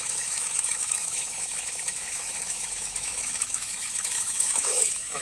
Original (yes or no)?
no